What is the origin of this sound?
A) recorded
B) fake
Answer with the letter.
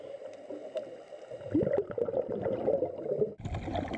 A